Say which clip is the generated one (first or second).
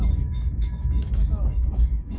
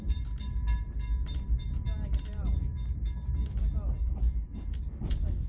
first